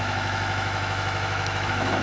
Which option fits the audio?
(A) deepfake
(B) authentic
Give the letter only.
A